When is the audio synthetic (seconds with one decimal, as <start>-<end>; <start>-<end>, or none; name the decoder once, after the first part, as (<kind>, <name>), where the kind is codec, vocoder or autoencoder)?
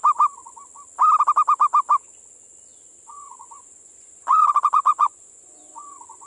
3.1-6.3 (vocoder, Vocos)